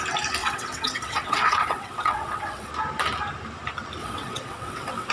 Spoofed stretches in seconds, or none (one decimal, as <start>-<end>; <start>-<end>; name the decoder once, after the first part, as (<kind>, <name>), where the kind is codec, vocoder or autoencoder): 0.4-2.7 (vocoder, WaveNeXt); 4.0-5.1